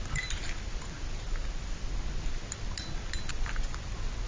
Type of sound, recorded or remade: recorded